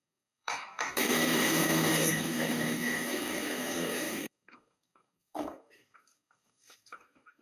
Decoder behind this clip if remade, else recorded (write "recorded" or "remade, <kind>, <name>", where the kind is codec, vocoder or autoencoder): remade, codec, DAC